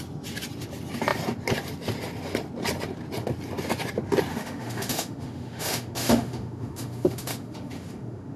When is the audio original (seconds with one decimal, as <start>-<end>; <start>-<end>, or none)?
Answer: 0.0-4.3